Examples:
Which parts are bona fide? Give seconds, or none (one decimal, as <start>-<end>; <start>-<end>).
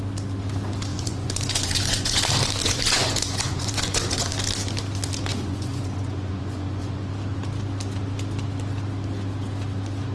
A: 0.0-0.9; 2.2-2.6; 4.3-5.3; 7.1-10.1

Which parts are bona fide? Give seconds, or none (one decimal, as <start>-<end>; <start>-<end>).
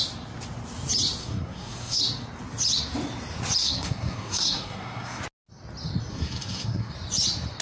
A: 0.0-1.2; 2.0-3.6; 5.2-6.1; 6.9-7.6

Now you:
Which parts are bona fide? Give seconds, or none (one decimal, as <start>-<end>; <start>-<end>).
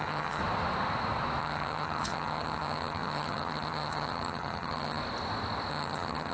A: 0.4-1.4; 5.0-5.7